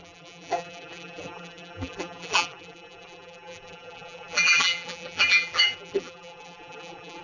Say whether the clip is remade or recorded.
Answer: remade